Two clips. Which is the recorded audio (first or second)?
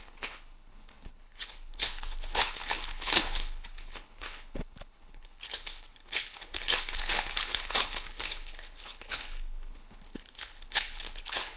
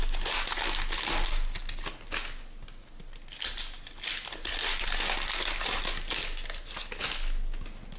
second